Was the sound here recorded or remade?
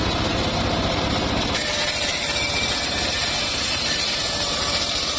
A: recorded